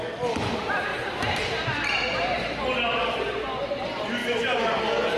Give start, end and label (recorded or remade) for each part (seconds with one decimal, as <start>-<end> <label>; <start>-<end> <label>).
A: 0.0-0.9 recorded; 0.9-2.6 remade; 2.6-4.2 recorded; 4.2-4.8 remade; 4.8-5.2 recorded